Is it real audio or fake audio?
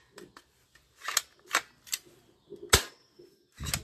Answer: real